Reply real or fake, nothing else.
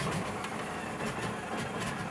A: real